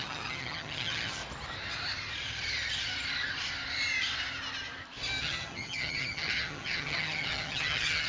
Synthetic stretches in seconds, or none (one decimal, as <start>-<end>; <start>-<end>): 0.0-1.2; 5.2-8.1